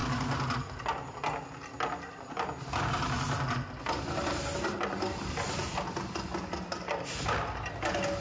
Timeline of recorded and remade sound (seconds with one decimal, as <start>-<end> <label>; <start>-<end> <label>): 0.0-8.2 recorded

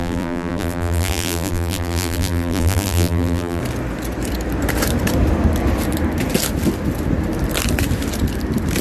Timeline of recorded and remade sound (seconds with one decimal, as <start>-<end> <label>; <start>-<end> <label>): 0.0-3.6 remade; 3.6-8.8 recorded

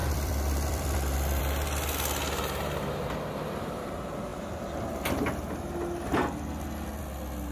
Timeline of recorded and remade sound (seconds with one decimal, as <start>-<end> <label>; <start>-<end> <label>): 0.0-1.4 remade; 1.4-7.5 recorded